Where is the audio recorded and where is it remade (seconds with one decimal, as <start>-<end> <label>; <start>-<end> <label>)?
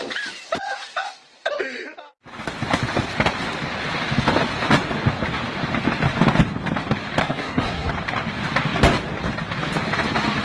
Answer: 0.0-7.2 recorded; 7.2-7.9 remade; 7.9-10.4 recorded